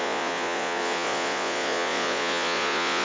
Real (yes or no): no